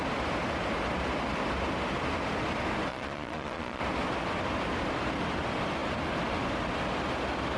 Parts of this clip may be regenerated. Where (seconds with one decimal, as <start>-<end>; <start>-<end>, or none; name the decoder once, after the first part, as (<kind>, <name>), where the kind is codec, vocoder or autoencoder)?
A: 2.9-3.8 (vocoder, Vocos)